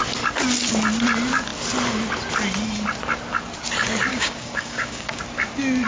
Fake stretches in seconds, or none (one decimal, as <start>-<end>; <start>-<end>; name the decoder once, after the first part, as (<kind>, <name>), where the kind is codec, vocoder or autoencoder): 4.1-5.2 (codec, DAC)